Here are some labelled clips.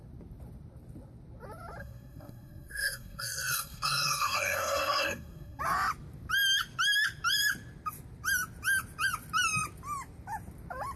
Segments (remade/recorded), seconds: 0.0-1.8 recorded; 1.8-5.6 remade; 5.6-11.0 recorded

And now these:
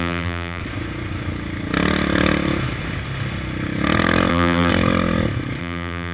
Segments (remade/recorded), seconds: 0.0-0.6 remade; 0.6-4.3 recorded; 4.3-4.7 remade; 4.7-5.6 recorded; 5.6-6.1 remade